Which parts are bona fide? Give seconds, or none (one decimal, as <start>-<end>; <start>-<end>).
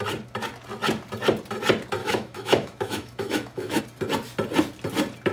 0.0-2.0; 3.8-5.3